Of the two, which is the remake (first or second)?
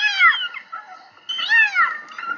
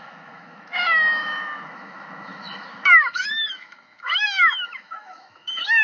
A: second